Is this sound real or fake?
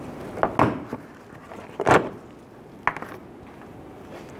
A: real